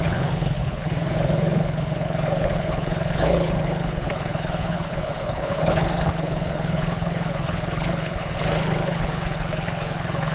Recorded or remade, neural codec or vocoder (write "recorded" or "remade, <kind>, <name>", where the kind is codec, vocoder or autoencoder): remade, codec, HILCodec